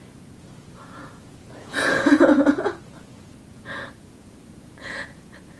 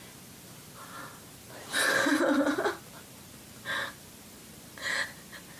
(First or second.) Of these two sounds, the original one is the second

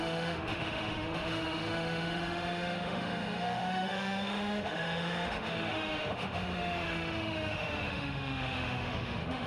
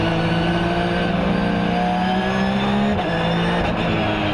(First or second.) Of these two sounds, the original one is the second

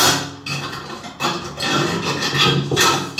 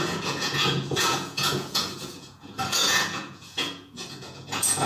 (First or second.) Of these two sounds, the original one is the first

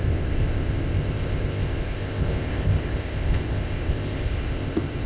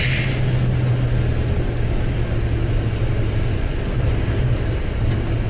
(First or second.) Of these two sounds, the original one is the second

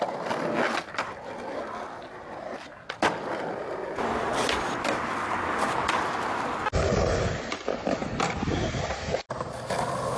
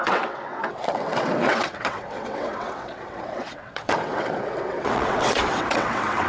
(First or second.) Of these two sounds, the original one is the first